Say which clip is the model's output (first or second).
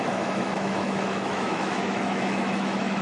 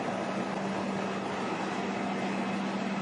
first